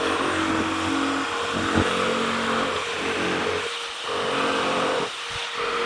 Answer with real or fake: real